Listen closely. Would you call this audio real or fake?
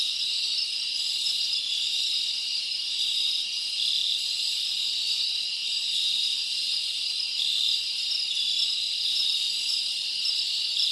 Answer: real